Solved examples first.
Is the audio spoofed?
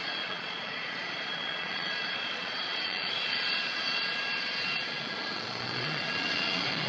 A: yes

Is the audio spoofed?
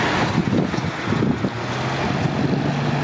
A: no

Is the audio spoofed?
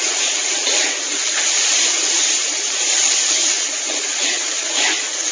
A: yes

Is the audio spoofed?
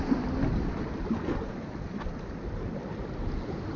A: no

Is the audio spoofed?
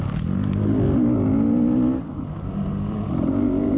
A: no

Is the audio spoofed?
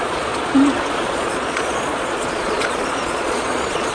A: yes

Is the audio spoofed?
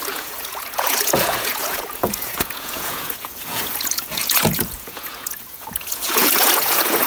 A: yes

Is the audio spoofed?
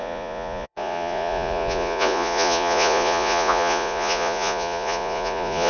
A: yes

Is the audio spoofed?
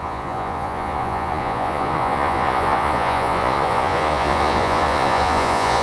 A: yes